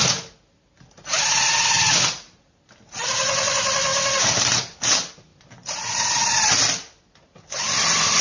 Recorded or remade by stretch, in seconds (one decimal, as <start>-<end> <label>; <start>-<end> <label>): 0.0-8.2 recorded